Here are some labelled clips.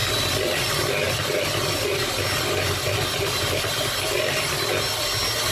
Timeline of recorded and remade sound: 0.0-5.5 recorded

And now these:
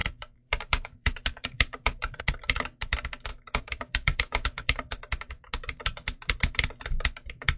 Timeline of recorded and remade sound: 0.0-2.2 remade; 2.2-3.3 recorded; 3.3-5.5 remade; 5.5-7.6 recorded